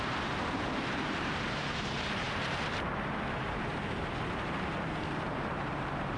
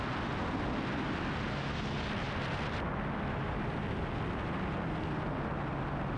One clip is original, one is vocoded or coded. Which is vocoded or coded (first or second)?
first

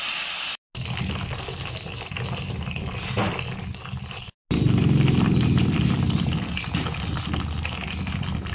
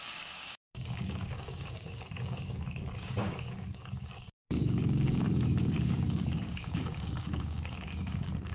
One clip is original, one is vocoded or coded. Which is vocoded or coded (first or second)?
second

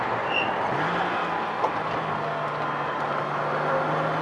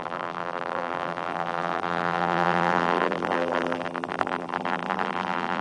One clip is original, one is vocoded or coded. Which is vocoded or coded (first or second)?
second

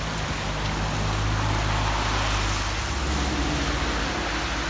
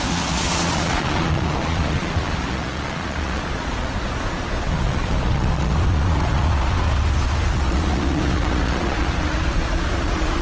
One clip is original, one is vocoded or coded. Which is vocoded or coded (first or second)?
second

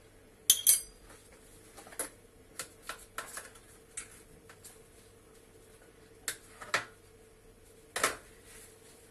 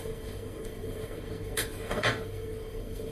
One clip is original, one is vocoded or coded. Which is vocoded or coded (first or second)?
second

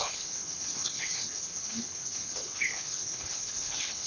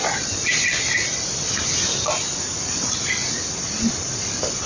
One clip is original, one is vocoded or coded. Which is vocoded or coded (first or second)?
first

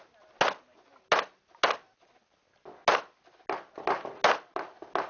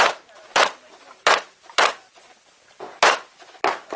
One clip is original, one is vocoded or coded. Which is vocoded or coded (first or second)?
second